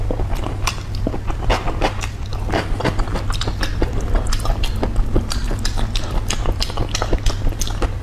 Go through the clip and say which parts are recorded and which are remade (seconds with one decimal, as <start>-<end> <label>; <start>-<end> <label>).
0.0-8.0 recorded